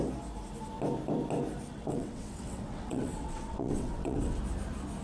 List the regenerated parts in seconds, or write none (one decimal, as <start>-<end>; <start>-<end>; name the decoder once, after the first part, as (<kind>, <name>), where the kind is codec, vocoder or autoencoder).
1.7-4.4 (vocoder, WaveNeXt)